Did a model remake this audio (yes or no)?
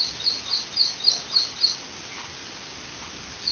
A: no